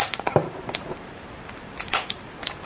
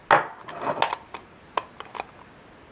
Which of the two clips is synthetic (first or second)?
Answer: first